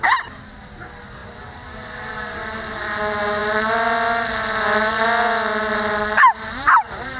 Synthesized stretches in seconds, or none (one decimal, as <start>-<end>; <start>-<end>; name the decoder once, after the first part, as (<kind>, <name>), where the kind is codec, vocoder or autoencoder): none